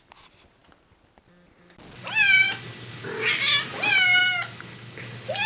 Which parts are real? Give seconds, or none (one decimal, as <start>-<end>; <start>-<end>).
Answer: 0.0-5.5